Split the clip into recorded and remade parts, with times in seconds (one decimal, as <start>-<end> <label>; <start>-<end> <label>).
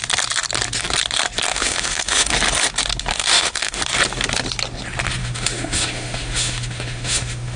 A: 0.0-1.5 recorded; 1.5-2.3 remade; 2.3-3.1 recorded; 3.1-3.8 remade; 3.8-5.2 recorded; 5.2-7.6 remade